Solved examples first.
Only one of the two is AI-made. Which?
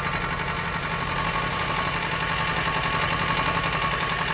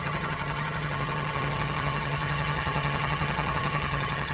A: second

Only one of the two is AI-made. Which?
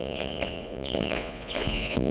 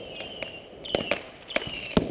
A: first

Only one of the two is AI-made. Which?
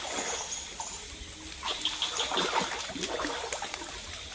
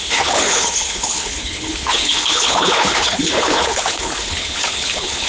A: second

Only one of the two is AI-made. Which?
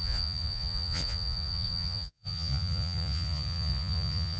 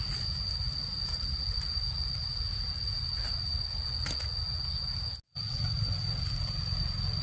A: first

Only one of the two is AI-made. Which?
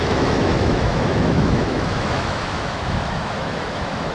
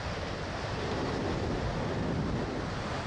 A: first